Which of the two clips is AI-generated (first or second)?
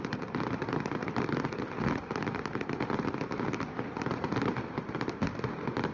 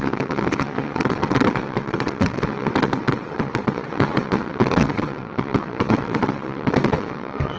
second